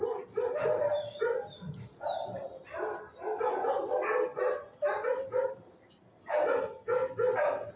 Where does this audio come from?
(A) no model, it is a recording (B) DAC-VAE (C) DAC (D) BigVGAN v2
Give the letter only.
A